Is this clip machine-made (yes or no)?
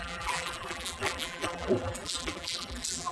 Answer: yes